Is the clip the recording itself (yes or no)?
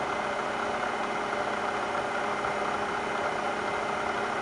yes